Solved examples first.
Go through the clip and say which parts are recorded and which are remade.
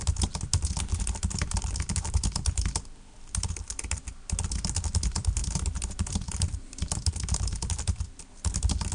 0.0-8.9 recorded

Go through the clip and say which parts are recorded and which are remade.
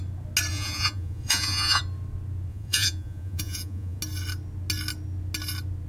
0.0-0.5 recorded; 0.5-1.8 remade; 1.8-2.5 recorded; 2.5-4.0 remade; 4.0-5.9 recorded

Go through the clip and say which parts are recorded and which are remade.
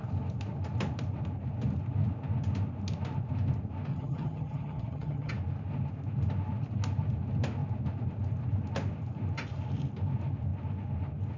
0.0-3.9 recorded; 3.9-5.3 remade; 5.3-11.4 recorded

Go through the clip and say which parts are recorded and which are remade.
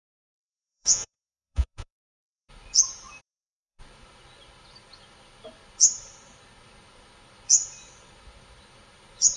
0.0-2.5 remade; 2.5-3.2 recorded; 3.2-3.8 remade; 3.8-9.4 recorded